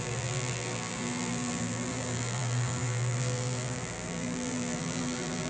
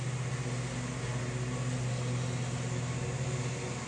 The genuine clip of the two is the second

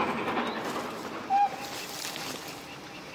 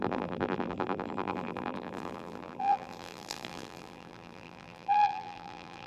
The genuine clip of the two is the first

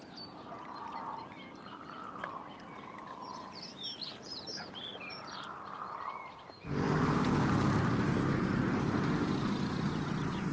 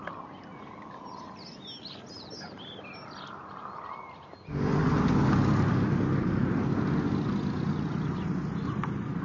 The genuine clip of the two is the second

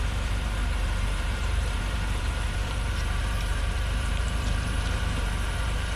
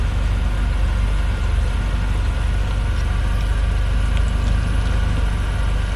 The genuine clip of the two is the second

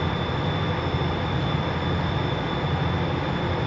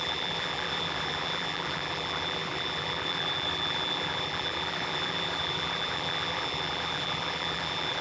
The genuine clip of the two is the first